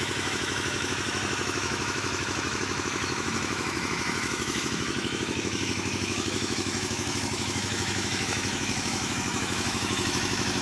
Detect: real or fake fake